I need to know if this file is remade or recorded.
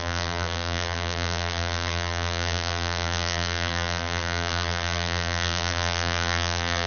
remade